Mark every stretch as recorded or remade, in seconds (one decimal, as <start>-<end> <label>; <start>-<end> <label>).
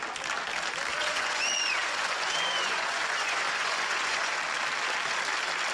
0.0-0.9 recorded; 0.9-4.3 remade; 4.3-5.7 recorded